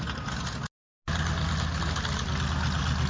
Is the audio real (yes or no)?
yes